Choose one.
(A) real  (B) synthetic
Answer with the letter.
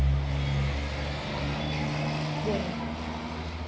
A